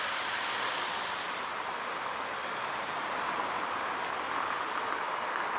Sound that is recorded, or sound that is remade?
recorded